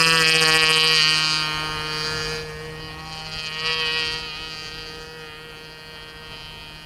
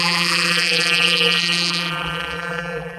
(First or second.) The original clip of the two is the first